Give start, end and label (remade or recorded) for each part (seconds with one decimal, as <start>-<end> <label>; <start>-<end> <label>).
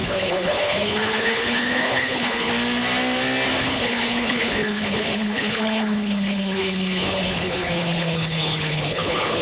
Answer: 0.0-2.5 remade; 2.5-3.6 recorded; 3.6-9.4 remade